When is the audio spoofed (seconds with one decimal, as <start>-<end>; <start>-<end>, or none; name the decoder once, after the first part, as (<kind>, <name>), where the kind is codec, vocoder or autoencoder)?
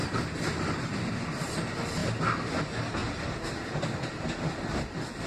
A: 0.0-2.0 (vocoder, BigVGAN v2); 2.6-3.0